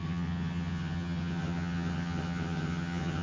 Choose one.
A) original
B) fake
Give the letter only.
B